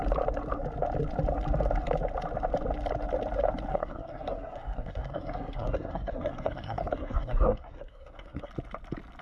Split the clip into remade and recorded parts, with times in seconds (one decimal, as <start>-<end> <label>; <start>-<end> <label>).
0.0-3.7 recorded; 3.7-8.5 remade; 8.5-9.2 recorded